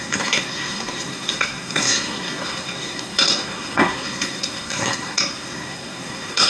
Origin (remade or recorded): remade